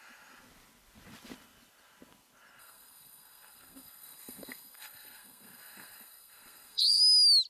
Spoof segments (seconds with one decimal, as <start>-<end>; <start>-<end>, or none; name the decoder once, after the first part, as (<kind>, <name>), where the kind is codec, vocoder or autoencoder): 2.6-7.0 (codec, SNAC)